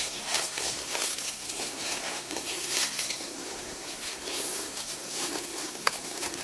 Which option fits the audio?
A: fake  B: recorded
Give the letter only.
A